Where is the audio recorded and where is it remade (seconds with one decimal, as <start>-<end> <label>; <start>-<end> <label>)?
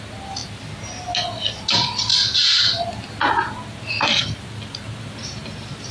0.0-5.9 recorded